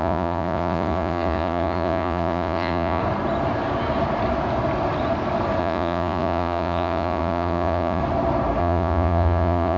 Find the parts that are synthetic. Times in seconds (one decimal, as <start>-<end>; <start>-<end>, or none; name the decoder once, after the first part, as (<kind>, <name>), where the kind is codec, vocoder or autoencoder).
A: 0.0-3.0 (vocoder, Vocos); 5.6-8.0; 8.6-9.8